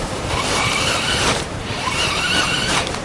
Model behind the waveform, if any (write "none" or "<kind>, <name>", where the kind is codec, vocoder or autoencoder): vocoder, BigVGAN v2